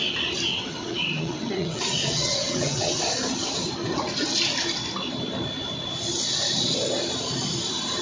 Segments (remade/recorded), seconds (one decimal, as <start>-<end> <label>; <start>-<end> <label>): 0.0-0.5 recorded; 0.5-3.0 remade; 3.0-8.0 recorded